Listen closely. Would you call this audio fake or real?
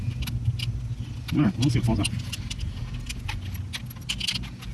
real